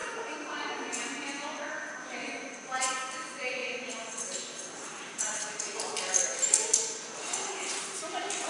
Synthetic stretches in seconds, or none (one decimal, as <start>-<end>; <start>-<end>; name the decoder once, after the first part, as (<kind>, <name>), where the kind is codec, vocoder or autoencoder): 0.0-0.7 (vocoder, BigVGAN v2); 2.2-2.9; 3.6-5.6; 7.2-8.0